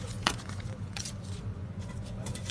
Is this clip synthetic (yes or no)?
yes